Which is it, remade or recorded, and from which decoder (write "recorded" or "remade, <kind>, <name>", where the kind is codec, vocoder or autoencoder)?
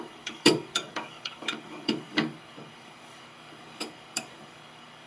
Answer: remade, codec, DAC